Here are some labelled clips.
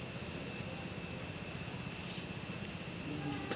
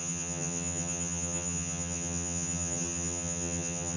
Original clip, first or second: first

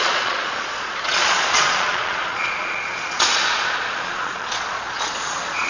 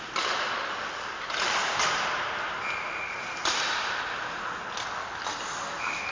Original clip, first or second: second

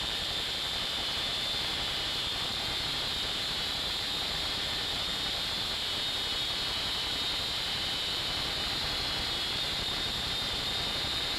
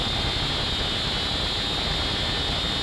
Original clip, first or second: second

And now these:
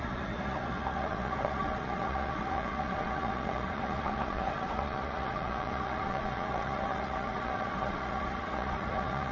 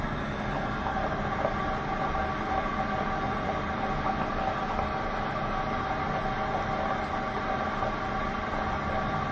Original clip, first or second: second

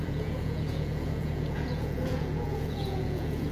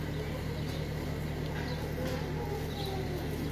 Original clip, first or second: second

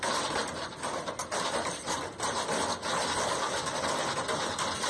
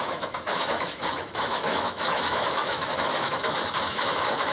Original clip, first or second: first